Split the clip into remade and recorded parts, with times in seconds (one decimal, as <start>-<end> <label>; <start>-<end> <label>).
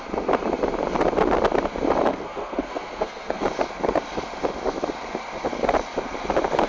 0.0-2.1 recorded; 2.1-3.4 remade; 3.4-6.7 recorded